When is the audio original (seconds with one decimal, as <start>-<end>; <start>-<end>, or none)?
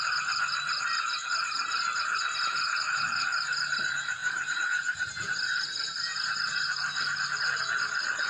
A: 0.0-2.5; 3.0-4.2; 7.6-8.3